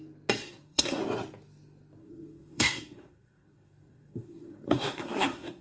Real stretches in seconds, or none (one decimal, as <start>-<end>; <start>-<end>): 0.0-0.4; 1.0-2.0